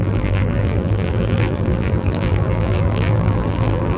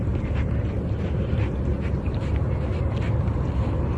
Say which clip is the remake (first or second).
first